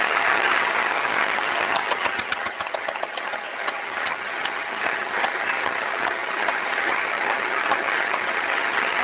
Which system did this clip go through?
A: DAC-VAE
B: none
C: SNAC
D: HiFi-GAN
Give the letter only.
D